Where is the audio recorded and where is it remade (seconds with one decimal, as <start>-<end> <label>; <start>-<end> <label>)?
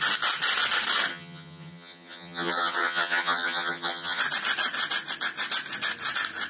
0.0-1.1 recorded; 1.1-4.2 remade; 4.2-6.5 recorded